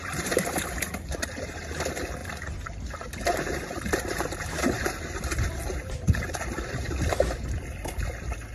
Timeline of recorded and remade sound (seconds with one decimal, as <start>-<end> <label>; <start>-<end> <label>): 0.0-1.6 remade; 1.6-2.2 recorded; 2.2-7.0 remade; 7.0-8.5 recorded